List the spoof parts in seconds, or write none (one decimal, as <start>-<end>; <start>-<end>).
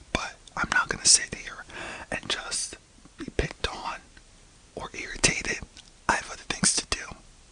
none